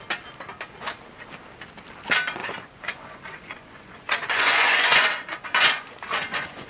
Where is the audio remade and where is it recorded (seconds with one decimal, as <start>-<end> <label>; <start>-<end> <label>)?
0.0-2.4 recorded; 2.4-6.7 remade